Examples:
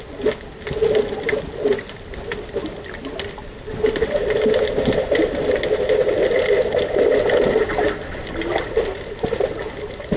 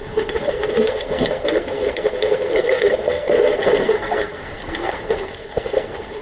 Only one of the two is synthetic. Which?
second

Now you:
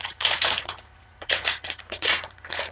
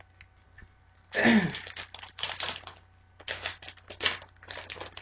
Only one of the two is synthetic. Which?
first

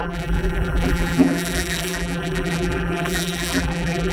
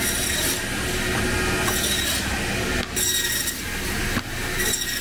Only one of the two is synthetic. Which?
first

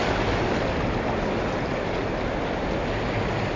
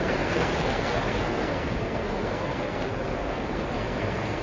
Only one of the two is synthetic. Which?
second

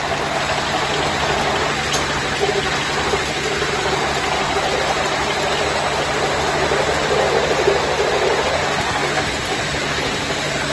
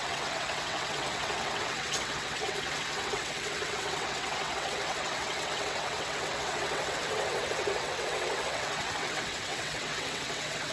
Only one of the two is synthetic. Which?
second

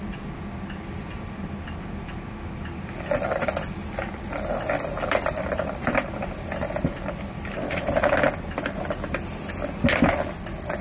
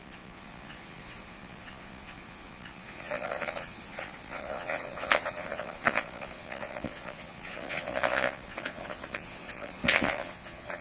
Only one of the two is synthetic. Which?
second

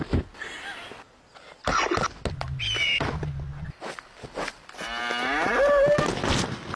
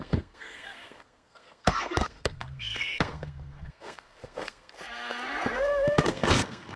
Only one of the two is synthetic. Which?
second